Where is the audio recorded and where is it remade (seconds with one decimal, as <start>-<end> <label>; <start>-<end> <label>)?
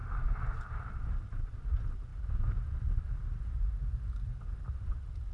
0.0-5.3 recorded